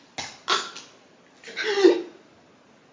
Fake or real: real